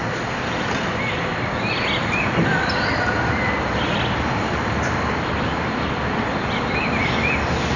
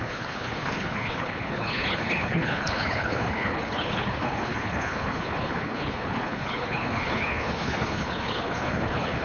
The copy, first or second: second